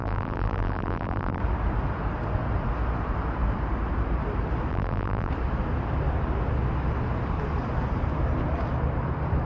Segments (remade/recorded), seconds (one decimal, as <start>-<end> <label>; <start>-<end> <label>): 0.0-1.4 remade; 1.4-4.7 recorded; 4.7-5.3 remade; 5.3-9.5 recorded